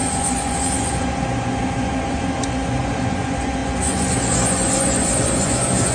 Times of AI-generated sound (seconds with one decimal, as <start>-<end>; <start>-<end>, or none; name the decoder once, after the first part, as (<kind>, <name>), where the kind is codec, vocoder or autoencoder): 0.0-5.9 (vocoder, Vocos)